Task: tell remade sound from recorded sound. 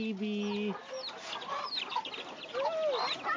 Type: recorded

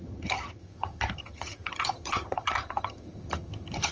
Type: remade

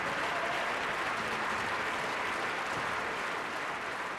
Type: recorded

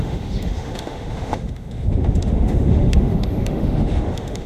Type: remade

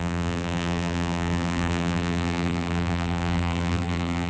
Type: remade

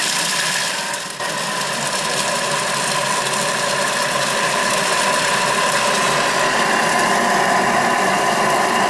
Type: recorded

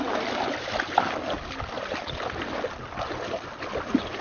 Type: recorded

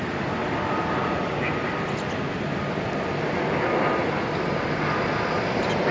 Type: recorded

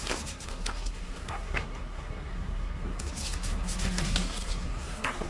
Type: remade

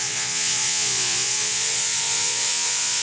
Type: remade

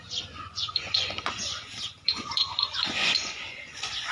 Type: remade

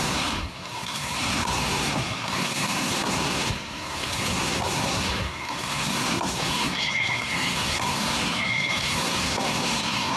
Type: remade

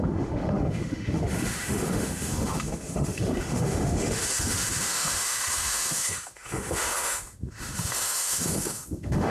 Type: remade